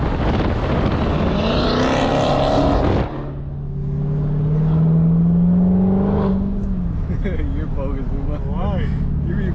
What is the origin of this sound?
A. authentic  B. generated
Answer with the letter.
A